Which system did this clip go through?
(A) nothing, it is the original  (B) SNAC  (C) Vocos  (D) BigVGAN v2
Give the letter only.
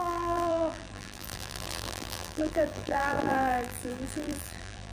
D